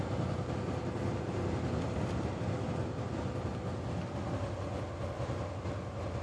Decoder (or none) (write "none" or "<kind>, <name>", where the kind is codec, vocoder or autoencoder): none